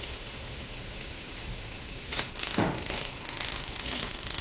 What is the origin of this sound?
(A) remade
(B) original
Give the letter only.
A